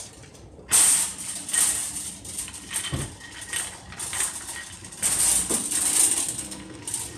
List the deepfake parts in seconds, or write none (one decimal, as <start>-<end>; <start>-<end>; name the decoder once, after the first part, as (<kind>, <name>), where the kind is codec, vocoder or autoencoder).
6.2-6.8 (codec, SNAC)